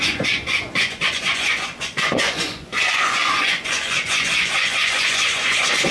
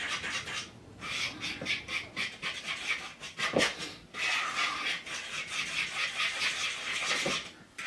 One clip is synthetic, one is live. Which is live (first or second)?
second